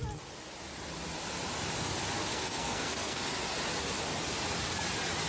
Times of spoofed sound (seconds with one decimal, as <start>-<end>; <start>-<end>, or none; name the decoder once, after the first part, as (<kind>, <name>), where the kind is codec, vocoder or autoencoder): 2.3-3.2 (codec, SNAC)